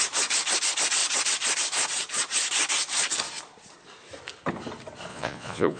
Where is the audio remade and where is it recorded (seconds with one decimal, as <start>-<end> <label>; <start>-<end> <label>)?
0.0-5.1 recorded; 5.1-5.8 remade